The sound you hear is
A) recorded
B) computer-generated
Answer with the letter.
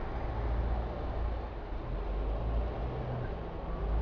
A